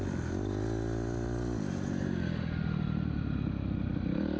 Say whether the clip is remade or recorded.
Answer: recorded